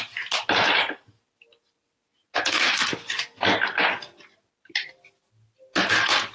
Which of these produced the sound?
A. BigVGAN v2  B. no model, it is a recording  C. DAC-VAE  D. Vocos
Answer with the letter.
B